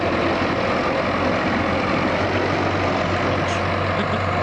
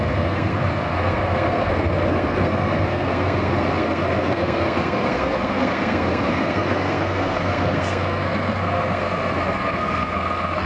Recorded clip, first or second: first